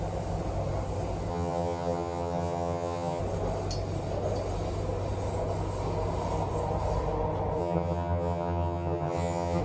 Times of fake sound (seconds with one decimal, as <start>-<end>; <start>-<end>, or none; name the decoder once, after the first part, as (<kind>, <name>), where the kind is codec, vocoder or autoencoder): 1.3-3.2 (vocoder, HiFi-GAN); 7.6-9.6